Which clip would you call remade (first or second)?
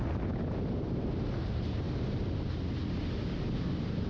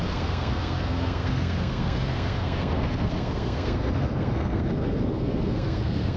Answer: second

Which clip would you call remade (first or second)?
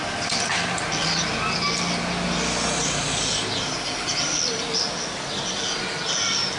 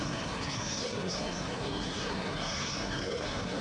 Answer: second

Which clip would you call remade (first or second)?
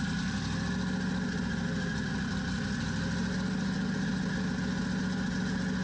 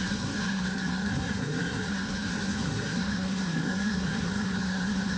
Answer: second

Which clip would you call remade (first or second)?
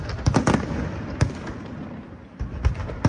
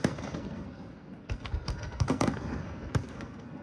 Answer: second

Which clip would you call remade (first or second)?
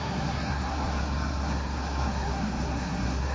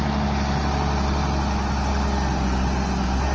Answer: first